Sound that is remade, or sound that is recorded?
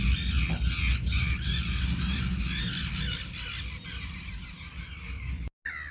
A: recorded